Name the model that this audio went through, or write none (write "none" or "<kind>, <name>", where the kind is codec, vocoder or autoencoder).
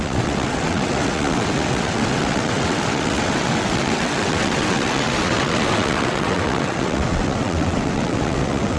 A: vocoder, WaveNeXt